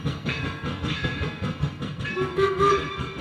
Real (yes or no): no